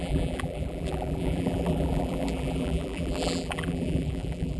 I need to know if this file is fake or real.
fake